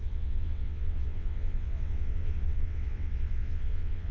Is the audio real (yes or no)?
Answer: no